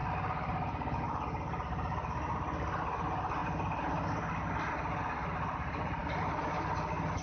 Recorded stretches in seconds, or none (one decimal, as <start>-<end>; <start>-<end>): 0.0-7.2